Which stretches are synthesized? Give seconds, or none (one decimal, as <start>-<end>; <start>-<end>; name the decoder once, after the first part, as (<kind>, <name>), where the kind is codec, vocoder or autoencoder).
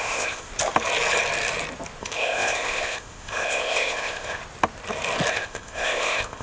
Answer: 0.0-0.5 (codec, ZipCodec); 2.0-4.4; 5.3-6.4